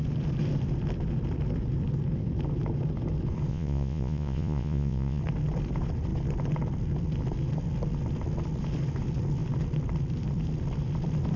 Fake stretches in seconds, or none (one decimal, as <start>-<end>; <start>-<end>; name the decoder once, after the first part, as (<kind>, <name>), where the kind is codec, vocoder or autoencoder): 3.5-5.2 (vocoder, Vocos)